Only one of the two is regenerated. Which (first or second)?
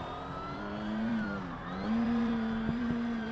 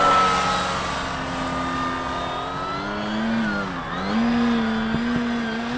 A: first